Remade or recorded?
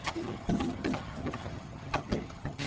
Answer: remade